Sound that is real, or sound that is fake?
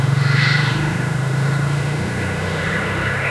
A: fake